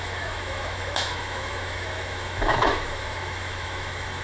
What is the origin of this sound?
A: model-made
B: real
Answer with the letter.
A